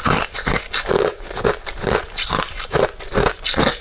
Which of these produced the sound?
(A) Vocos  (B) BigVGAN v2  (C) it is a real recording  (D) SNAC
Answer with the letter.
C